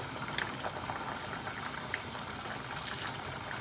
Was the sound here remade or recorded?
recorded